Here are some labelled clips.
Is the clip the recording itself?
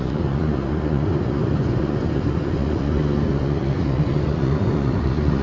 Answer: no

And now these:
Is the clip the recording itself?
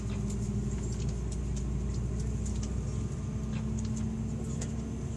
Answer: yes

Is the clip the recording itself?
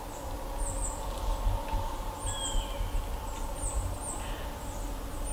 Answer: yes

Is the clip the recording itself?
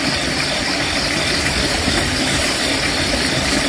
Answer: yes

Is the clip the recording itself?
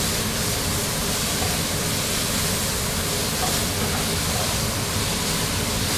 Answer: no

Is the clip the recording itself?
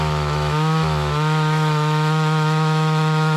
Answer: no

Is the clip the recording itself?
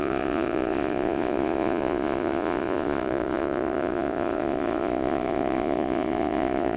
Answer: no